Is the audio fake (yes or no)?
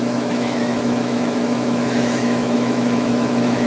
yes